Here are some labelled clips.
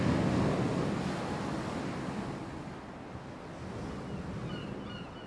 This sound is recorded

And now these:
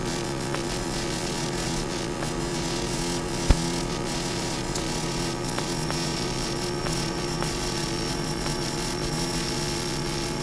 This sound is remade